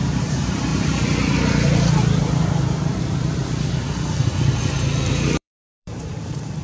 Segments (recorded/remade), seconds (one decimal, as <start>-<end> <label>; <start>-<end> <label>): 0.0-0.7 remade; 0.7-1.9 recorded; 1.9-3.4 remade; 3.4-5.1 recorded; 5.1-6.6 remade